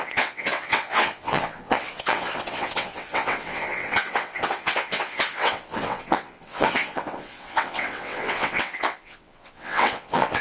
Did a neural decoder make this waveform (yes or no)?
yes